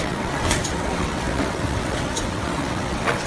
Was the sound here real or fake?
fake